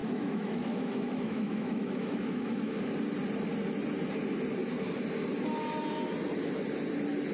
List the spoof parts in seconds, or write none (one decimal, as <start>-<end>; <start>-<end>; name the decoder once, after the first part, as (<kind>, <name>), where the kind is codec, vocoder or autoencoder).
0.0-2.9 (autoencoder, DAC-VAE)